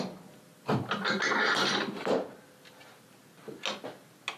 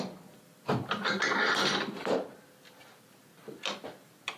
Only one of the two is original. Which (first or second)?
first